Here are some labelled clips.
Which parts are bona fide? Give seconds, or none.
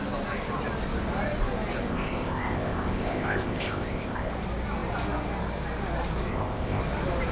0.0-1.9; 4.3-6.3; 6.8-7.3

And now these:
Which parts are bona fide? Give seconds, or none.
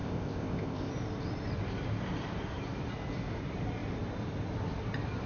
0.9-5.3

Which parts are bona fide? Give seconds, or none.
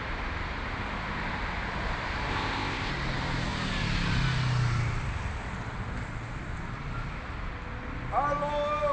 0.0-2.3; 2.9-8.9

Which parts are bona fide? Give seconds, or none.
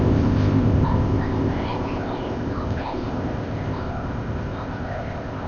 none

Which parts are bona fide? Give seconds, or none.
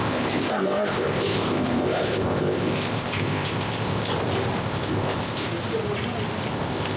4.1-4.6; 5.5-6.5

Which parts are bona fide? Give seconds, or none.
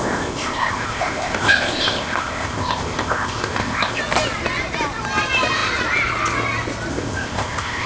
4.0-6.9